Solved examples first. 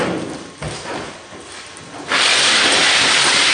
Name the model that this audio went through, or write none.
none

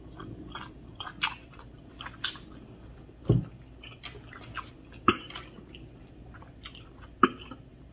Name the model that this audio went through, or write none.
none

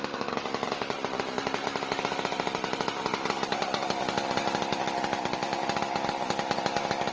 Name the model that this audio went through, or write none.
none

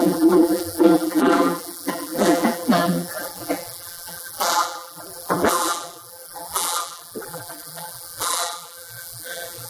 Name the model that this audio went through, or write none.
vocoder, BigVGAN v2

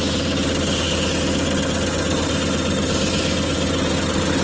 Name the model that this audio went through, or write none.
none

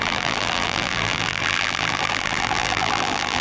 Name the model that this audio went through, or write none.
vocoder, BigVGAN v2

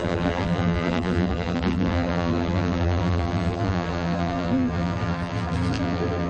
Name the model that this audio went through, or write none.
vocoder, BigVGAN v2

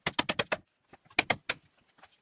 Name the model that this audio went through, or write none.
none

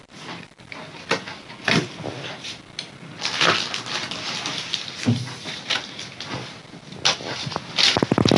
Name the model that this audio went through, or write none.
none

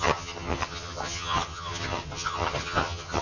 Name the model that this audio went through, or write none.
vocoder, HiFi-GAN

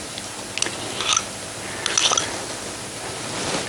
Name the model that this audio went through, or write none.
none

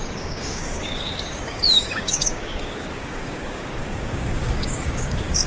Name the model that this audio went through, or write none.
codec, DAC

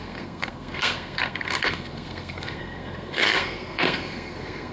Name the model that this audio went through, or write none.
codec, SNAC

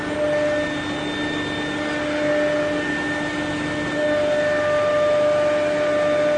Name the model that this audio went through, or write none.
none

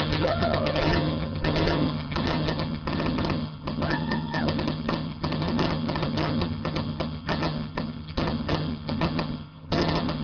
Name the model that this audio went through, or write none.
vocoder, HiFi-GAN